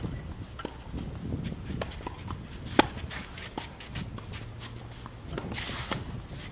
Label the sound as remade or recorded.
recorded